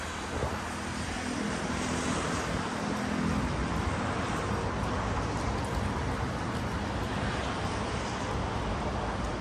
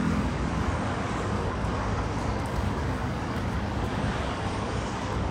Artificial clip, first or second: second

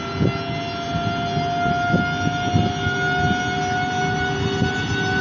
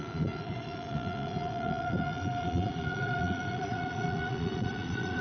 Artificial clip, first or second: second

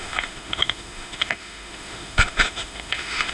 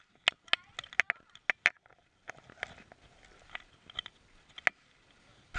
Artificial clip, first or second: first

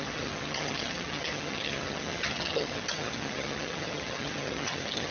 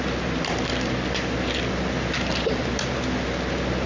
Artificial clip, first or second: first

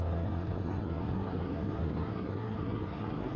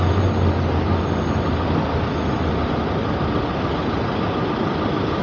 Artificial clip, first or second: first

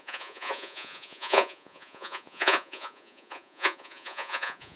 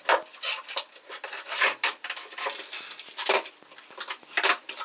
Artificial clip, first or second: first